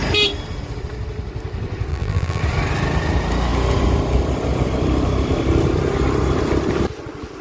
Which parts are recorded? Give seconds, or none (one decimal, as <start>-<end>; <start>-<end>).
0.0-1.9; 2.4-7.4